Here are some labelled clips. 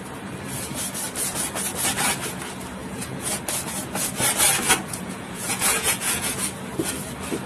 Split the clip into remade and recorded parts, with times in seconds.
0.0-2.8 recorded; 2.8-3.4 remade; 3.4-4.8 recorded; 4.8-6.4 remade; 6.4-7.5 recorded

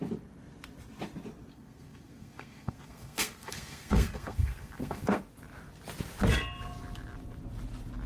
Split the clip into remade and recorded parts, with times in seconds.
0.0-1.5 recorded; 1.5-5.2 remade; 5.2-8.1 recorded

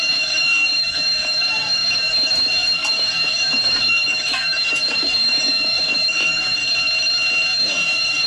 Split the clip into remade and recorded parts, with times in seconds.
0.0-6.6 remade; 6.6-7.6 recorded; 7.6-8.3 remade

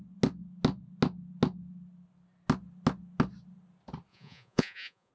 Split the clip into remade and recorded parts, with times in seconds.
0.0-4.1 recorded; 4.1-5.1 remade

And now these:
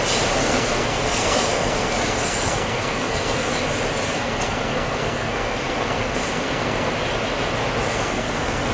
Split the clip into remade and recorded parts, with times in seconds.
0.0-0.4 recorded; 0.4-3.5 remade; 3.5-4.1 recorded; 4.1-6.9 remade; 6.9-7.9 recorded; 7.9-8.7 remade

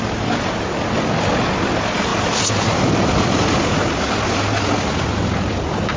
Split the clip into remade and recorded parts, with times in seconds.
0.0-6.0 recorded